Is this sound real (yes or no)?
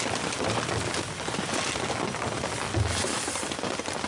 yes